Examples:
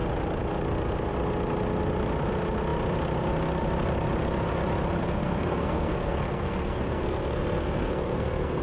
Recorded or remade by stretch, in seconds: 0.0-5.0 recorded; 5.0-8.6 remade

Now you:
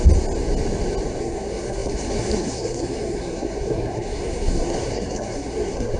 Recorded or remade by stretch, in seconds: 0.0-1.2 recorded; 1.2-6.0 remade

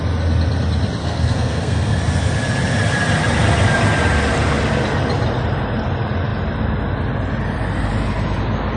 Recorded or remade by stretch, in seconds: 0.0-1.0 recorded; 1.0-2.0 remade; 2.0-8.8 recorded

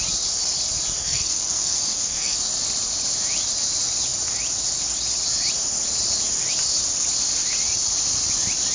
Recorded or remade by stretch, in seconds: 0.0-1.0 recorded; 1.0-2.4 remade; 2.4-8.7 recorded

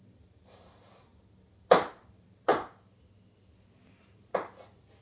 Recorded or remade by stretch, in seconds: 0.0-1.1 remade; 1.1-2.1 recorded; 2.1-2.5 remade; 2.5-3.9 recorded; 3.9-4.3 remade; 4.3-5.0 recorded